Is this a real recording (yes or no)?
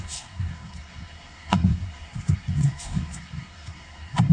no